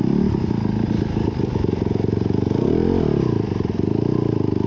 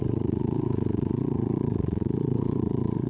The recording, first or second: first